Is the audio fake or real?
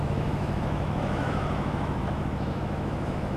fake